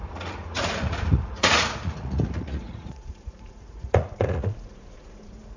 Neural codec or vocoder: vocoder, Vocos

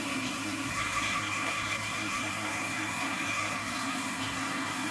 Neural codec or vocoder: codec, SNAC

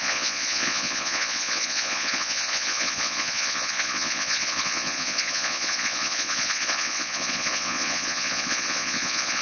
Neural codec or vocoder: vocoder, Vocos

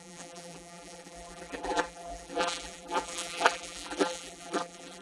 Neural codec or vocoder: vocoder, BigVGAN v2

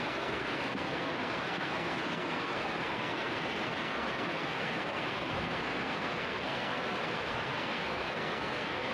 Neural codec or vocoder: codec, SNAC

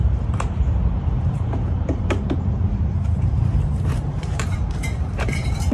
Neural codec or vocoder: vocoder, BigVGAN v2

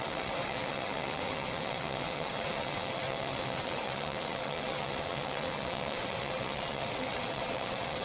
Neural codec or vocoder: vocoder, WaveNeXt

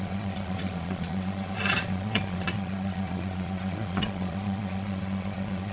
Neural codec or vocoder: vocoder, Vocos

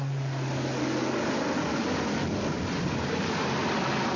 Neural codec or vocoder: none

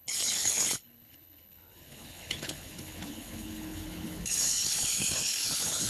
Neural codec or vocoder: codec, HILCodec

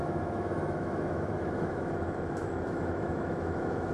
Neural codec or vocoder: autoencoder, DAC-VAE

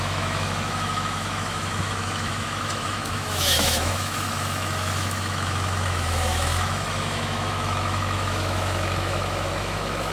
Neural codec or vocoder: autoencoder, DAC-VAE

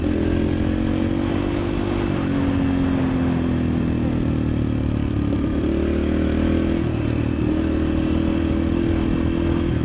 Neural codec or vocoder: none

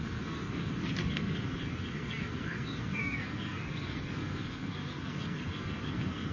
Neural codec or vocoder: codec, SNAC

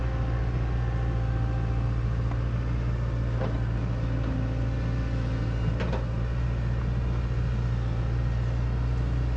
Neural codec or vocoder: none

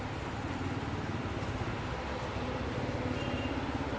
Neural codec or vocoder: none